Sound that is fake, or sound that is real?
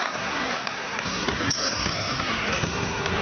fake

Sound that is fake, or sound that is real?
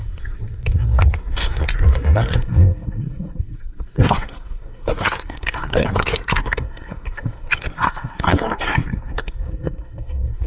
fake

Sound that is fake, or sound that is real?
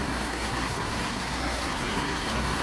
fake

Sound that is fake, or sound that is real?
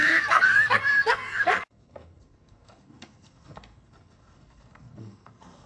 fake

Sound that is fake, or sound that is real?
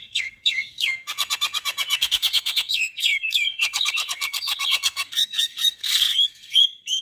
fake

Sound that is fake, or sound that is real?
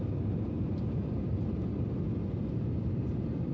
real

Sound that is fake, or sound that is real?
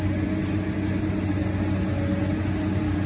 real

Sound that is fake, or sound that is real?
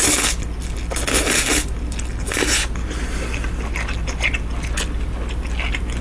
real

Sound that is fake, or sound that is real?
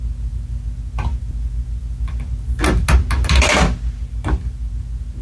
real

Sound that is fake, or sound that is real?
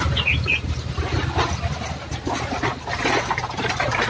real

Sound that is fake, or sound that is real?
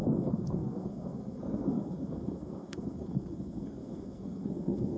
fake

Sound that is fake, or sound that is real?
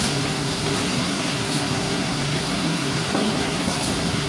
fake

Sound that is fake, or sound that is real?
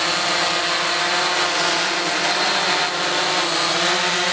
real